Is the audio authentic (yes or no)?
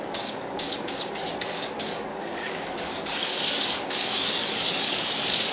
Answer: no